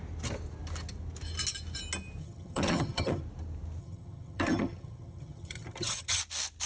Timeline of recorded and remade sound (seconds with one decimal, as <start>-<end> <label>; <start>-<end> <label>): 0.0-2.2 recorded; 2.2-3.2 remade; 3.2-3.8 recorded; 3.8-6.2 remade; 6.2-6.7 recorded